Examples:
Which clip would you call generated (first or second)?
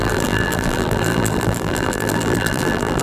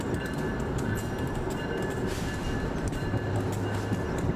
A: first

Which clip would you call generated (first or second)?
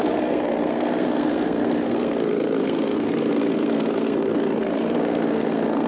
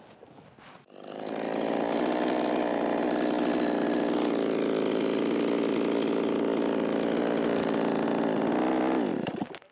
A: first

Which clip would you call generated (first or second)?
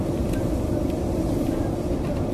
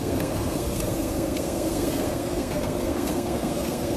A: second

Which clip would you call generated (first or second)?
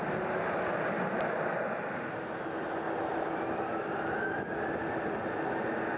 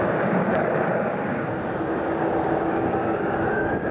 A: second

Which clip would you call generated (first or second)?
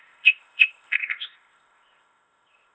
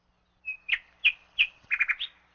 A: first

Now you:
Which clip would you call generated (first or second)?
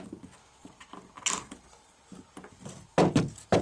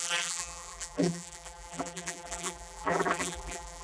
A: second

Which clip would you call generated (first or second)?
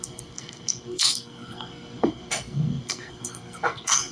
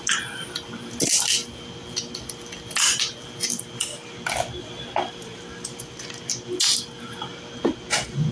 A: first